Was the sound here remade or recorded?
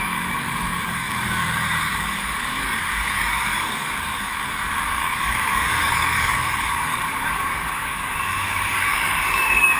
remade